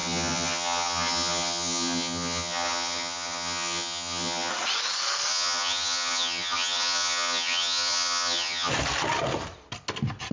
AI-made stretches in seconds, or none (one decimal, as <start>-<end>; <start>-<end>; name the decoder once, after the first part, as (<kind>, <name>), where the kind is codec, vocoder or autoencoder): 0.0-4.5 (vocoder, HiFi-GAN); 5.3-8.7